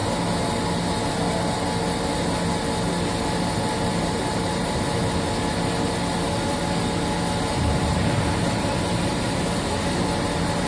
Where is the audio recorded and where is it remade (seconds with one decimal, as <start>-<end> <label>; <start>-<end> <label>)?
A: 0.0-3.2 recorded; 3.2-5.0 remade; 5.0-7.5 recorded; 7.5-10.7 remade